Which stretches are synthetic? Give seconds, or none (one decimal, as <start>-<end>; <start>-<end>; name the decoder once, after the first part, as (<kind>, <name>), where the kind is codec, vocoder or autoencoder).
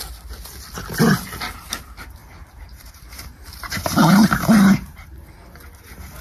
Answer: 2.2-5.3 (vocoder, BigVGAN v2)